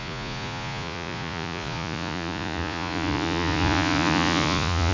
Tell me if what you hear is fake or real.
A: fake